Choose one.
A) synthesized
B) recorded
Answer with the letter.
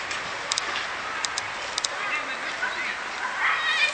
B